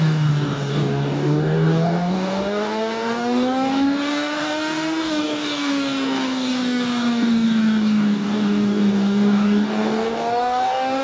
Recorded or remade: remade